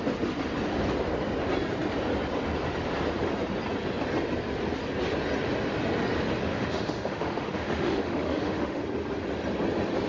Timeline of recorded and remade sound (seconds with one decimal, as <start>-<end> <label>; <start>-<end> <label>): 0.0-6.4 recorded; 6.4-8.8 remade; 8.8-10.1 recorded